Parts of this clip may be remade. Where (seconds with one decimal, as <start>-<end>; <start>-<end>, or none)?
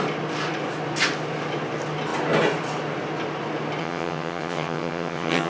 3.8-5.5